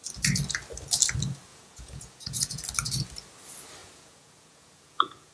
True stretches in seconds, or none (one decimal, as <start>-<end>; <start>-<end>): 0.0-1.5; 2.6-3.8